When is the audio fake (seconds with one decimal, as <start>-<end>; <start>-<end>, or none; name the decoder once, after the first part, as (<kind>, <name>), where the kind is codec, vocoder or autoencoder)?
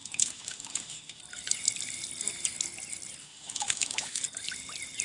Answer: 0.0-1.2 (autoencoder, DAC-VAE); 3.2-4.2